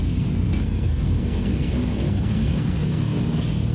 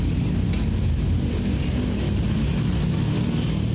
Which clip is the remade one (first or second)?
first